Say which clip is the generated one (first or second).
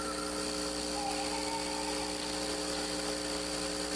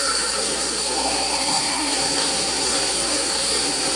second